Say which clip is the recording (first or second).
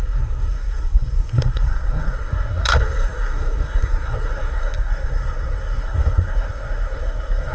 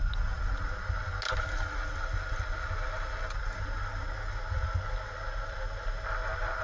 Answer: second